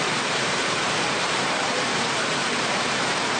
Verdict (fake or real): fake